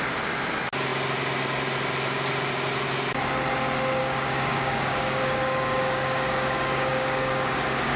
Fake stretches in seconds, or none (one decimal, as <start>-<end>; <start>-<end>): 4.0-8.0